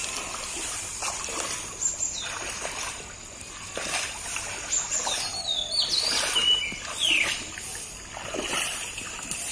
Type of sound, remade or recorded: recorded